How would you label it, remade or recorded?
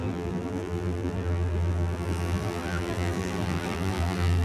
remade